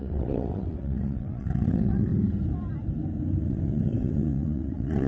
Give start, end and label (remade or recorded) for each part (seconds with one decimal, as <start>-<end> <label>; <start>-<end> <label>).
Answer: 0.0-2.1 remade; 2.1-3.4 recorded; 3.4-5.1 remade